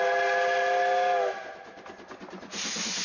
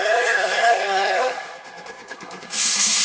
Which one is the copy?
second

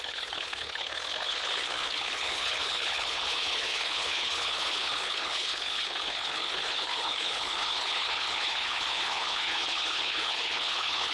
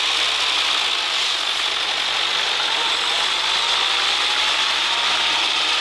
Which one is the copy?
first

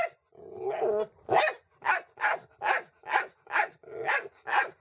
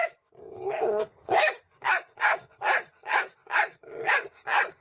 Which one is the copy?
second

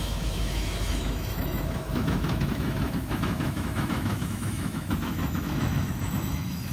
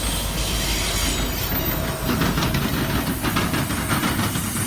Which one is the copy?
first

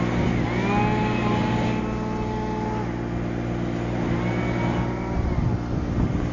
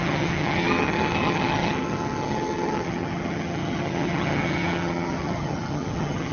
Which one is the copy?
second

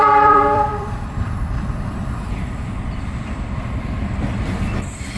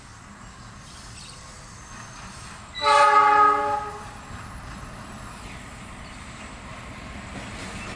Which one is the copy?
first